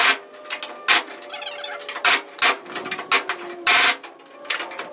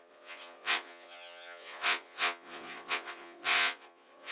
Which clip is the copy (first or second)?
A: second